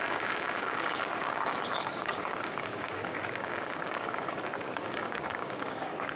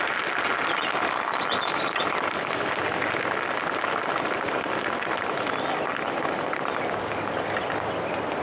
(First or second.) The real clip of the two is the second